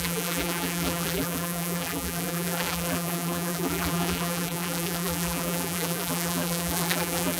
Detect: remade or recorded remade